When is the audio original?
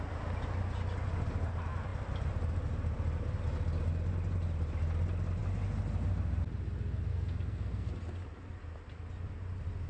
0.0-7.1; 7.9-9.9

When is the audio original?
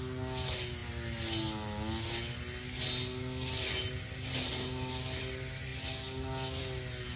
0.0-7.2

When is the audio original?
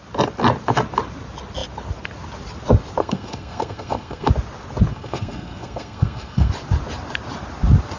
0.0-3.0; 4.3-4.9; 6.5-8.0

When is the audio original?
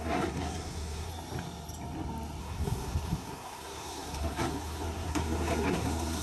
1.1-2.4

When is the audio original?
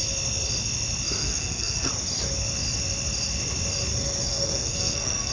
0.0-1.2; 1.9-4.3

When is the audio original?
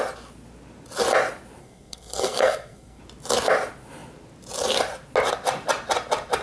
0.0-1.6; 3.0-6.4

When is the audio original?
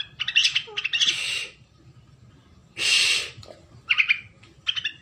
0.0-5.0